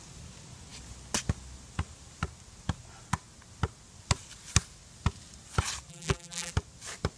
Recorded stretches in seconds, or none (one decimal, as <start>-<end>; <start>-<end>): 0.0-5.9; 6.5-7.2